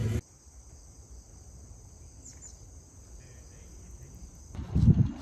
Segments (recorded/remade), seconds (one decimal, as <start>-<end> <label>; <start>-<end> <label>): 0.0-5.2 recorded